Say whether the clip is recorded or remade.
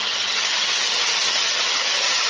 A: remade